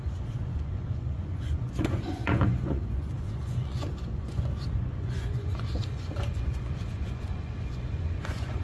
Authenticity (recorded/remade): remade